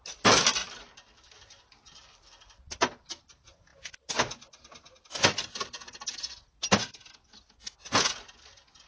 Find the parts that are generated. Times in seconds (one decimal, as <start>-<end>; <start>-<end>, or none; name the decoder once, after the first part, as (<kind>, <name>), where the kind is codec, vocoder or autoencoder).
none